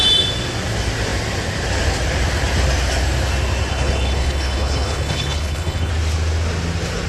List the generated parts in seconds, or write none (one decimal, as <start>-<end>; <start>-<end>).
3.7-5.9